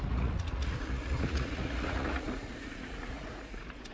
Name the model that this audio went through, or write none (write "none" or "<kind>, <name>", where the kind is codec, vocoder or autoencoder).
vocoder, Vocos